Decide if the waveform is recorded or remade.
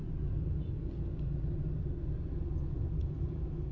recorded